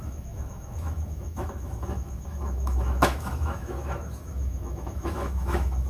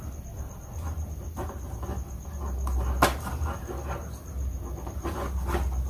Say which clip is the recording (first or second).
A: second